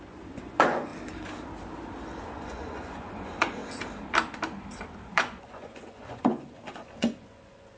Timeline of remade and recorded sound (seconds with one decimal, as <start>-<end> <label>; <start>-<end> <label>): 0.0-0.9 remade; 0.9-2.2 recorded; 2.2-3.6 remade; 3.6-5.0 recorded; 5.0-7.8 remade